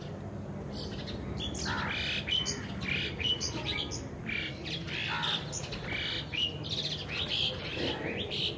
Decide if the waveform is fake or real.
real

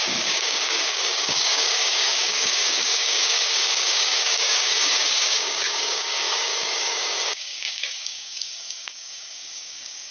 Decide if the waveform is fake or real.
fake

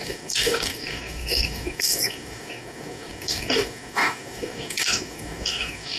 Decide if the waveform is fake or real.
fake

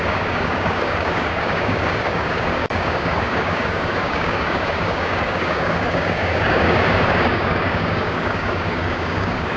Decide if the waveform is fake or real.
fake